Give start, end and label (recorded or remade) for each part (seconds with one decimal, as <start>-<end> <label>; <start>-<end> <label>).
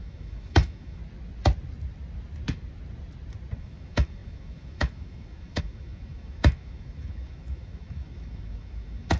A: 0.0-1.0 remade; 1.0-3.6 recorded; 3.6-9.2 remade